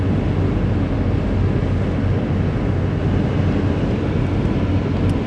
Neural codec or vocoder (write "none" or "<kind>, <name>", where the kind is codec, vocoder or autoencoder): none